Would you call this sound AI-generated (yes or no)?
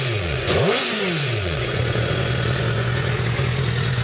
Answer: yes